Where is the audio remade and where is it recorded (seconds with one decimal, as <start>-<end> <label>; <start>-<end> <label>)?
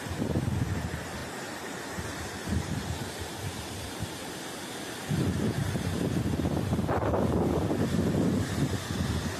0.0-1.2 recorded; 1.2-4.7 remade; 4.7-5.6 recorded; 5.6-6.3 remade; 6.3-9.4 recorded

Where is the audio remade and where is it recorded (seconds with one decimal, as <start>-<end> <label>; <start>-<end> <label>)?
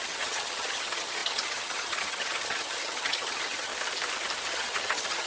0.0-3.7 remade; 3.7-4.5 recorded; 4.5-5.3 remade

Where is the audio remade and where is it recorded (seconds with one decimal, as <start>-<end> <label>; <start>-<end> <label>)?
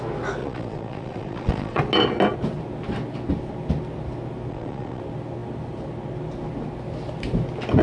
0.0-0.4 recorded; 0.4-1.8 remade; 1.8-4.5 recorded; 4.5-5.0 remade; 5.0-7.8 recorded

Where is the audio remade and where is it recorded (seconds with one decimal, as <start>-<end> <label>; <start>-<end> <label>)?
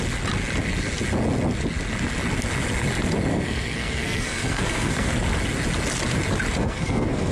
0.0-3.3 recorded; 3.3-5.1 remade; 5.1-6.6 recorded; 6.6-7.3 remade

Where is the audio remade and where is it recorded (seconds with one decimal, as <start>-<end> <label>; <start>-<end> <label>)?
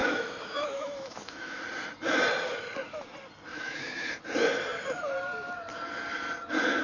0.0-1.6 remade; 1.6-3.5 recorded; 3.5-4.1 remade; 4.1-6.8 recorded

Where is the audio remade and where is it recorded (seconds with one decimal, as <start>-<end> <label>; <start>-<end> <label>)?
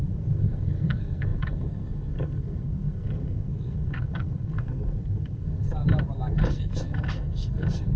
0.0-5.7 remade; 5.7-6.5 recorded; 6.5-8.0 remade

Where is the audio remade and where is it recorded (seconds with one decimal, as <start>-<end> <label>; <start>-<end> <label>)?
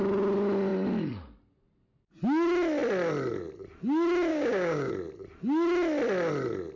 0.0-4.3 recorded; 4.3-4.9 remade; 4.9-6.8 recorded